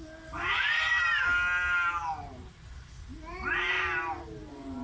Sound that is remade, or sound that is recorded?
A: recorded